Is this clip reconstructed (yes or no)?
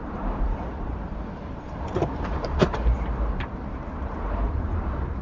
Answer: yes